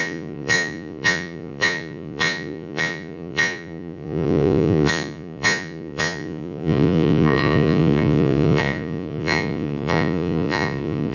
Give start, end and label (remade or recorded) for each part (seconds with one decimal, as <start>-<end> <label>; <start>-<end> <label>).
0.0-11.1 remade